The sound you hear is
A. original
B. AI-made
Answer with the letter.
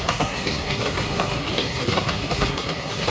B